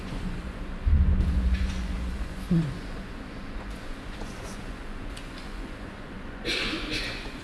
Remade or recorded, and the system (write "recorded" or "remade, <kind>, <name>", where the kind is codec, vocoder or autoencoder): remade, vocoder, Vocos